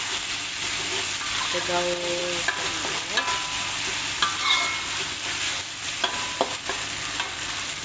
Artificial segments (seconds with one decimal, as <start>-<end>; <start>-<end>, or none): none